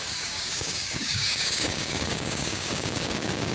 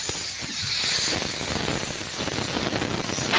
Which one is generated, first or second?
first